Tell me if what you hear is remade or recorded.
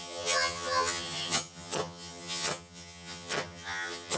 remade